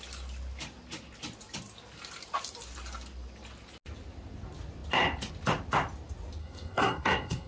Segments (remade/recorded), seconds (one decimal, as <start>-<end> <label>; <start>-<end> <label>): 0.0-6.4 recorded; 6.4-7.5 remade

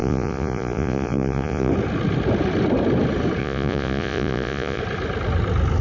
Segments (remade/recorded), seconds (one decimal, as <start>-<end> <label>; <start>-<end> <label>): 0.0-1.7 remade; 1.7-3.4 recorded; 3.4-4.8 remade; 4.8-5.8 recorded